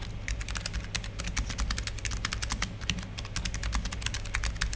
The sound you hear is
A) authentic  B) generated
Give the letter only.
A